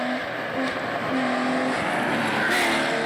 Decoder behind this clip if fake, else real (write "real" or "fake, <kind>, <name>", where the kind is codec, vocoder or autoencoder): real